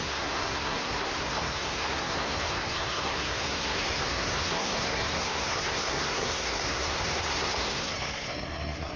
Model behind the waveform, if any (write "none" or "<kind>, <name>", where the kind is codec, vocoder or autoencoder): codec, SNAC